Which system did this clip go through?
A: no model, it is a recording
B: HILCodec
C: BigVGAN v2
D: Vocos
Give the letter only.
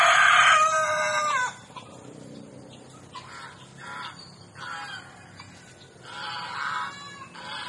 A